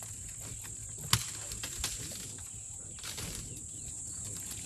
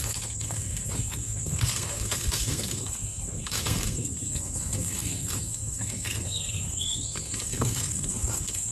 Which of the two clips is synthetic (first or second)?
second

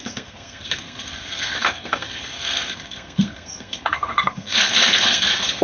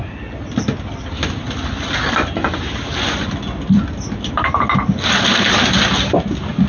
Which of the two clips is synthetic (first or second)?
first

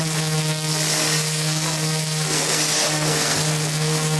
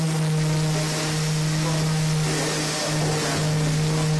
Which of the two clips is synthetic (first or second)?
first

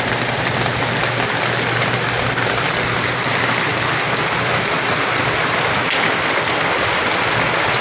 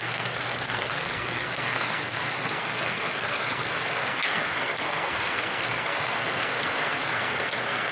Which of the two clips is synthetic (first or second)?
second